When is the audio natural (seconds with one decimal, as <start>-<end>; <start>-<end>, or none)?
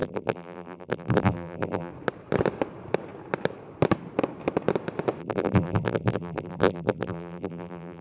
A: 1.9-5.2